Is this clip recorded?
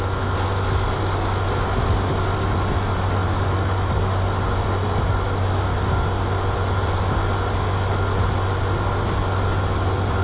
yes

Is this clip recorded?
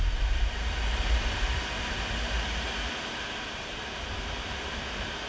yes